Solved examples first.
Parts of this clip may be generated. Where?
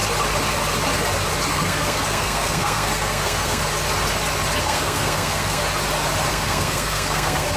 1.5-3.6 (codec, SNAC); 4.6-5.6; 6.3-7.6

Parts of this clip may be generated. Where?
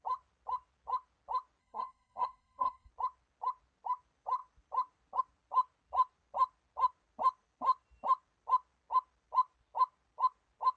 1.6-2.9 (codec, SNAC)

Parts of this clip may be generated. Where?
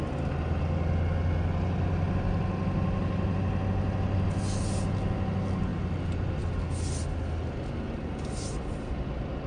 none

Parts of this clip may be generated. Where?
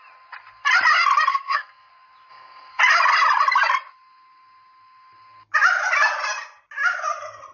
1.3-1.9 (codec, SNAC); 2.3-2.8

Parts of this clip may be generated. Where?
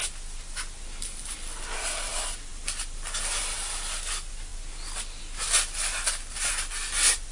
none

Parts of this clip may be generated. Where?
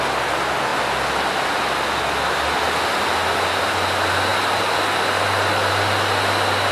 none